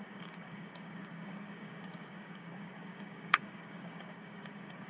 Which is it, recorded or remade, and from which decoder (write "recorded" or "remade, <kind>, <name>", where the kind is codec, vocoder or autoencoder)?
remade, codec, DAC